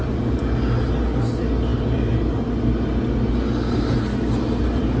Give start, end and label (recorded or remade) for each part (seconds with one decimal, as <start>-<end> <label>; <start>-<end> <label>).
0.0-5.0 recorded